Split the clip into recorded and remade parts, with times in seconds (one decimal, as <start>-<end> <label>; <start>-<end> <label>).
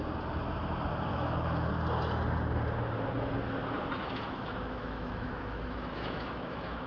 0.0-1.1 recorded; 1.1-1.7 remade; 1.7-4.0 recorded; 4.0-6.9 remade